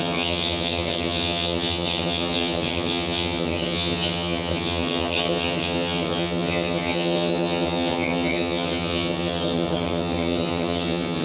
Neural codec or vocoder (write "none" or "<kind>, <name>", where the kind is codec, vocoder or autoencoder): vocoder, HiFi-GAN